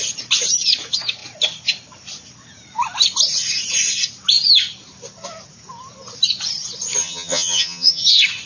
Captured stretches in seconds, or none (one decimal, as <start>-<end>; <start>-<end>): 0.0-7.0; 8.0-8.5